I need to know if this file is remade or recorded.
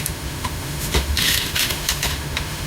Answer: remade